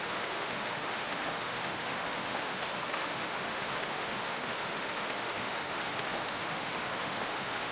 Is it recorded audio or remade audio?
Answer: remade